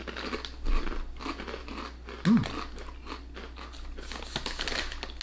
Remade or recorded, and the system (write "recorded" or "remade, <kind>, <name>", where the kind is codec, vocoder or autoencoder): recorded